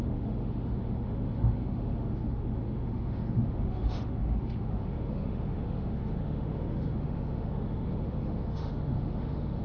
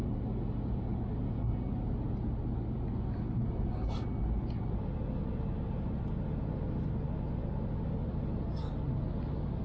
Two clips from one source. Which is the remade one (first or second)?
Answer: first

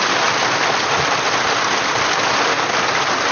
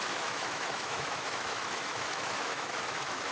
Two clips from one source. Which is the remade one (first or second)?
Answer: second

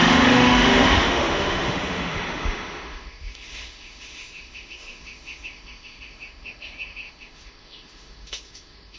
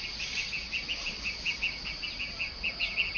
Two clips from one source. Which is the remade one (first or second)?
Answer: first